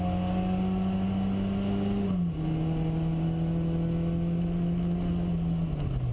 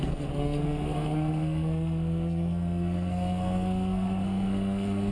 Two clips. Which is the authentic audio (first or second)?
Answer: first